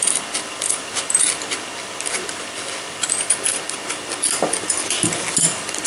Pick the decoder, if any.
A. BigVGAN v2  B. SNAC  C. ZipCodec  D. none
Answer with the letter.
D